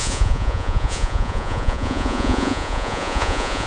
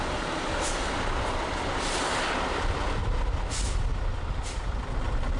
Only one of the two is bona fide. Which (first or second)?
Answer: second